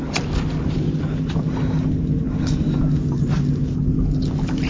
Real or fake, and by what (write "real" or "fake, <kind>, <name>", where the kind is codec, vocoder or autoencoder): real